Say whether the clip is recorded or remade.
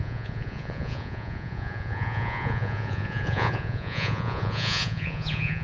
remade